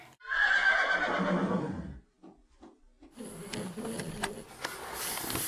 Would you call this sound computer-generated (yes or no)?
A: no